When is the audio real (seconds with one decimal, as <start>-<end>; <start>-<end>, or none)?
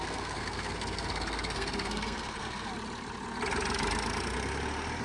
2.7-5.0